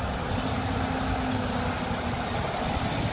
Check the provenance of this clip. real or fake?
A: real